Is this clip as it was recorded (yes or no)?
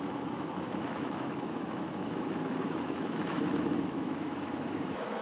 no